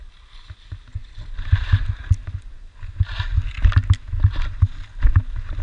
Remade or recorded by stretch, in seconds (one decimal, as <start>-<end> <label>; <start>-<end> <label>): 0.0-1.0 recorded; 1.0-1.6 remade; 1.6-5.6 recorded